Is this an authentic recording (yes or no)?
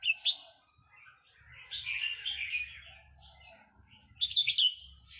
yes